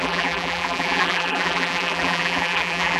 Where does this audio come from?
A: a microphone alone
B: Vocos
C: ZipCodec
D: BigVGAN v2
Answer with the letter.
D